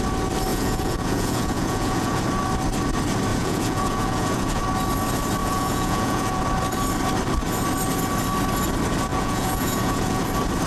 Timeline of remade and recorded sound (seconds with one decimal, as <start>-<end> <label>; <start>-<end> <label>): 0.0-0.5 recorded; 0.5-2.2 remade; 2.2-3.3 recorded; 3.3-4.6 remade; 4.6-5.4 recorded; 5.4-6.4 remade; 6.4-9.1 recorded; 9.1-10.2 remade; 10.2-10.7 recorded